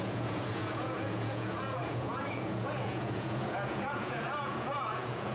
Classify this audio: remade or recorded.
remade